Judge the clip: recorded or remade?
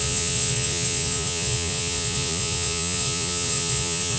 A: remade